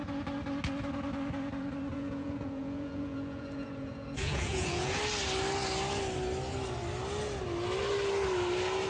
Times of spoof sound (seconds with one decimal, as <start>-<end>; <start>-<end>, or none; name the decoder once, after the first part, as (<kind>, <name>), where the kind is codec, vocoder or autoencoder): 1.9-5.0 (vocoder, Vocos)